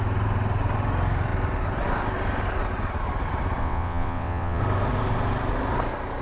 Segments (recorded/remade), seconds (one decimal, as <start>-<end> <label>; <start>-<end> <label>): 0.0-3.6 recorded; 3.6-4.6 remade; 4.6-6.2 recorded